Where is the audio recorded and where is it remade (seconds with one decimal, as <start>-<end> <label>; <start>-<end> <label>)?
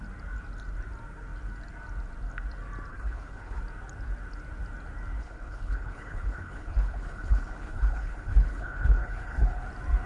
0.0-2.9 recorded; 2.9-3.6 remade; 3.6-5.2 recorded; 5.2-9.6 remade; 9.6-10.1 recorded